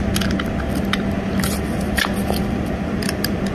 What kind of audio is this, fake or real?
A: real